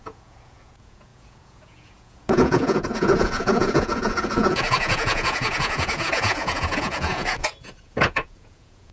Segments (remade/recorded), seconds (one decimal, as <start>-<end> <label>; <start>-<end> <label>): 0.0-8.9 remade